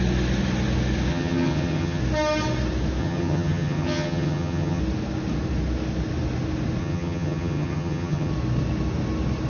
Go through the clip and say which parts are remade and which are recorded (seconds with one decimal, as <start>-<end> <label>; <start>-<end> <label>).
0.0-1.1 recorded; 1.1-2.0 remade; 2.0-3.0 recorded; 3.0-4.8 remade; 4.8-6.8 recorded; 6.8-8.3 remade; 8.3-9.5 recorded